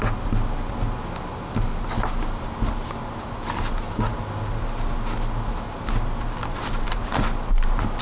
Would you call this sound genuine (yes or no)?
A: yes